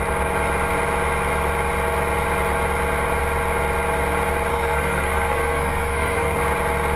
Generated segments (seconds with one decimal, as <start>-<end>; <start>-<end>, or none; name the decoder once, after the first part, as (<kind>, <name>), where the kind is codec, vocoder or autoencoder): 4.5-6.4 (codec, SNAC)